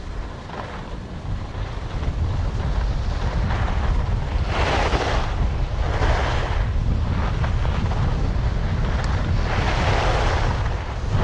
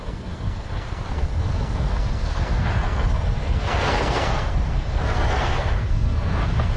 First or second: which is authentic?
first